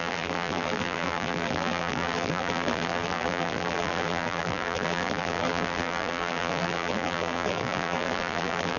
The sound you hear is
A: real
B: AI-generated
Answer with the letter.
B